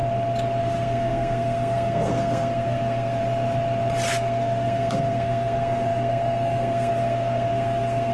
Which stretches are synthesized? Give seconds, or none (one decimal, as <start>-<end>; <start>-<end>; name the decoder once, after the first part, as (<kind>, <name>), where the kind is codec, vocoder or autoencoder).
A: 0.6-3.2 (codec, SNAC); 4.1-8.1